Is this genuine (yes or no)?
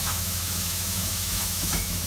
no